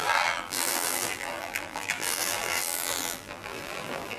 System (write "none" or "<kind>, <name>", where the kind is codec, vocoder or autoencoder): vocoder, BigVGAN v2